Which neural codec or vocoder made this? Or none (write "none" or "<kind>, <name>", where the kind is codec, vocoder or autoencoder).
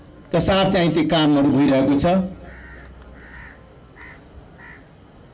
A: none